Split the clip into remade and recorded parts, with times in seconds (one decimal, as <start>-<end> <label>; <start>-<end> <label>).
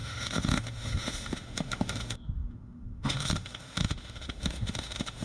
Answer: 0.0-5.2 remade